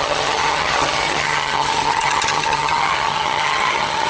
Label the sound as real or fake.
fake